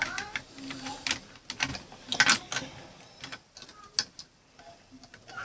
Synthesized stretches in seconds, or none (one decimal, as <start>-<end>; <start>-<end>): none